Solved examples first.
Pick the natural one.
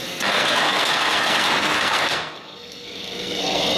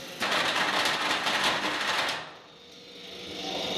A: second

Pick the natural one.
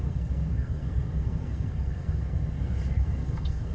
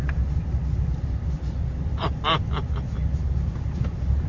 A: second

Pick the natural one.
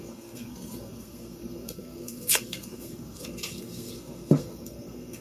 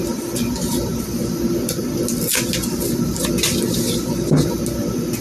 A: second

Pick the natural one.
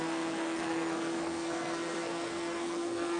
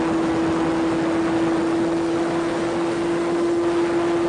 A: second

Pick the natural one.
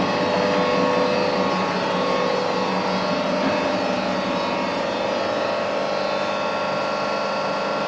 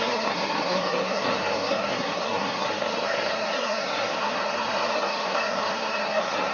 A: first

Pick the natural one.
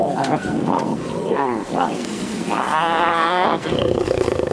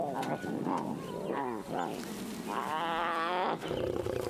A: second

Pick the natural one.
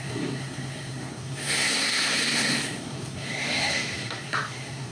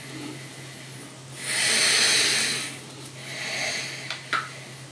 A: second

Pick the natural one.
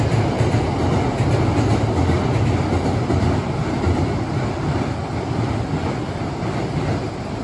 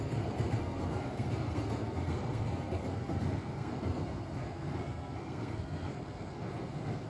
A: first